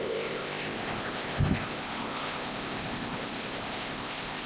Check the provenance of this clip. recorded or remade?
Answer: remade